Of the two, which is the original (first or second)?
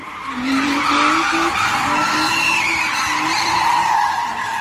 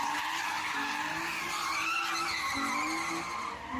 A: second